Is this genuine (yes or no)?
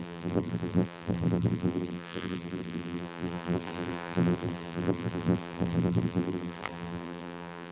no